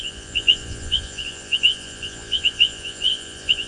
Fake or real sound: fake